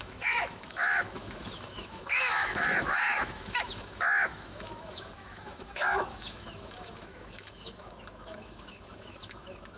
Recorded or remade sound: remade